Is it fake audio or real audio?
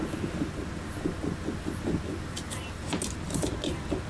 real